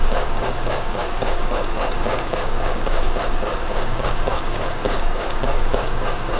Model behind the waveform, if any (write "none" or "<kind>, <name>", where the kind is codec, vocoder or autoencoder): codec, DAC